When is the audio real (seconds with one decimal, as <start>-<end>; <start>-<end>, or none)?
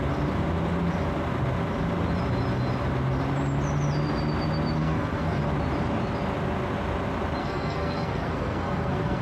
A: 0.0-4.8; 5.4-7.4